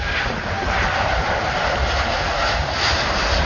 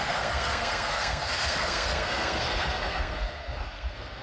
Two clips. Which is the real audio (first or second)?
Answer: first